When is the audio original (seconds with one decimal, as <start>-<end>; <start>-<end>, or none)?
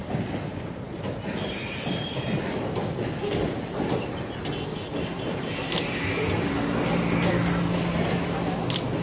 1.2-9.0